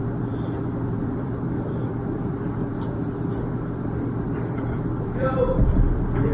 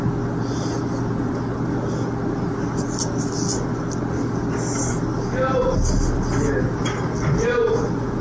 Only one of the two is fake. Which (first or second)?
first